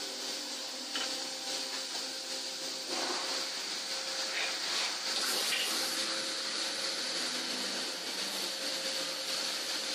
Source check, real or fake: real